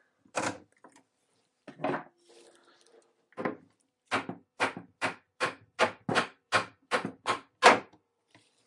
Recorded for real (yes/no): yes